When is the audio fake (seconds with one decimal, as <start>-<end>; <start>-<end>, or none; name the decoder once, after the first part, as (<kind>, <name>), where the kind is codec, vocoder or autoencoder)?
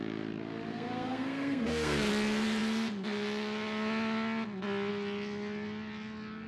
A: 0.7-2.1 (codec, SNAC)